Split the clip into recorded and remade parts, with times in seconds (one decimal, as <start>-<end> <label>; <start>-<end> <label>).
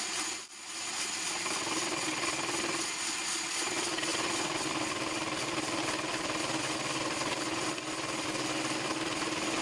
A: 0.0-9.6 recorded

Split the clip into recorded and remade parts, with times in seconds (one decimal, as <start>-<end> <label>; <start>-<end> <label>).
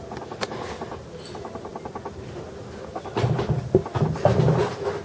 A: 0.0-5.0 recorded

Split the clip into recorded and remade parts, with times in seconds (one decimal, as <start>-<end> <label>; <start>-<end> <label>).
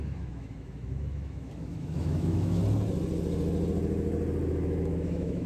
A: 0.0-2.6 remade; 2.6-4.5 recorded; 4.5-5.5 remade